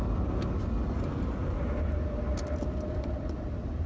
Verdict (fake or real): real